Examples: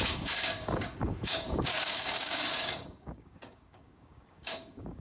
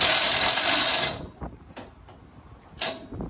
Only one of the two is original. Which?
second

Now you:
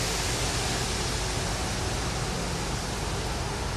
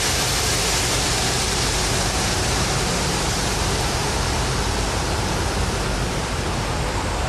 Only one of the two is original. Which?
first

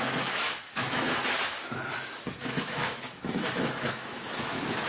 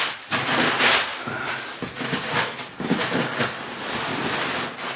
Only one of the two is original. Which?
second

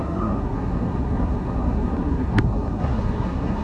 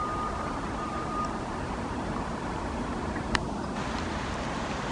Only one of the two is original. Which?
second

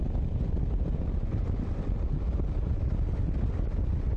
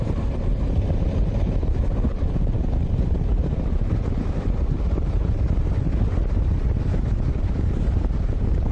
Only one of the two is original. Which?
first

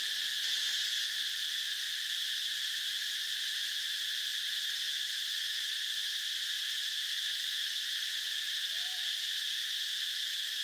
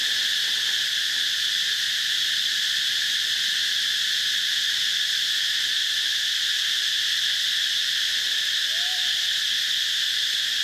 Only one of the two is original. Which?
second